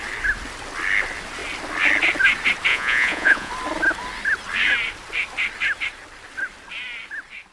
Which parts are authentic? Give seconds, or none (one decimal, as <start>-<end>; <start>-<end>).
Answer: 0.0-2.7; 3.5-7.5